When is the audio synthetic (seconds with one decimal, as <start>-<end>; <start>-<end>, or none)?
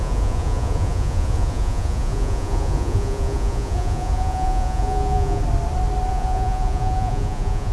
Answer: 0.0-5.4; 6.1-7.7